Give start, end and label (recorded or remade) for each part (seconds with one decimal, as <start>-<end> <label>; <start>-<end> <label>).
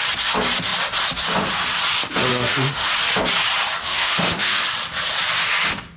0.0-2.3 recorded; 2.3-2.9 remade; 2.9-3.8 recorded; 3.8-4.6 remade; 4.6-6.0 recorded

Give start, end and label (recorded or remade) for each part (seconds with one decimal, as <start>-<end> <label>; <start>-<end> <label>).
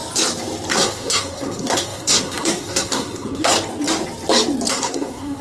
0.0-0.7 recorded; 0.7-3.5 remade; 3.5-4.7 recorded; 4.7-5.4 remade